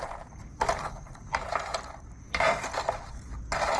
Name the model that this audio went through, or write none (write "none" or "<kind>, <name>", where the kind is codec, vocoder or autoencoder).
none